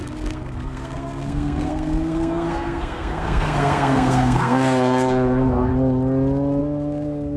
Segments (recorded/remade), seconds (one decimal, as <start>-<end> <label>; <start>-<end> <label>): 0.0-5.7 remade; 5.7-6.6 recorded; 6.6-7.4 remade